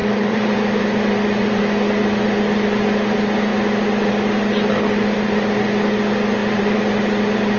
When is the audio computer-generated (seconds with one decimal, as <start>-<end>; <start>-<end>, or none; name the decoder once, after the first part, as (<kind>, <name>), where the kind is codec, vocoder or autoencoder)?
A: 0.0-1.6 (vocoder, BigVGAN v2); 6.4-6.9